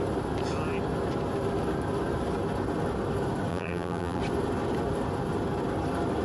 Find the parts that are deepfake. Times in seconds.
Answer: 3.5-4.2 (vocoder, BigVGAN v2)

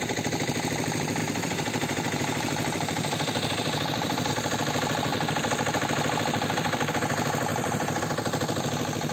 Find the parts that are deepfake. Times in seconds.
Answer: 1.2-4.3 (vocoder, BigVGAN v2); 7.5-8.0

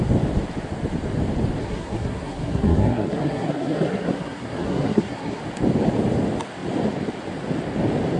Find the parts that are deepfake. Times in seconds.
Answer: 1.6-5.4 (codec, SNAC)

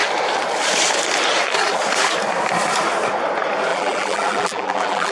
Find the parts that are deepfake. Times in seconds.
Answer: 3.7-5.1 (vocoder, BigVGAN v2)

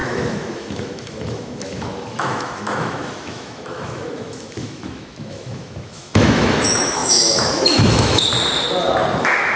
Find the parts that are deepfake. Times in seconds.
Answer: 0.0-8.3 (autoencoder, DAC-VAE); 9.2-9.6

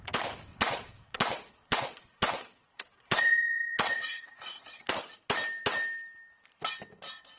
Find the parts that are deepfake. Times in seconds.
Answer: 0.5-4.9 (vocoder, Vocos)